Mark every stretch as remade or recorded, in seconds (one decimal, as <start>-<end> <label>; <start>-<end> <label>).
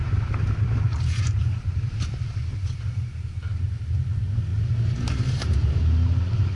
0.0-3.6 remade; 3.6-4.5 recorded; 4.5-5.8 remade; 5.8-6.6 recorded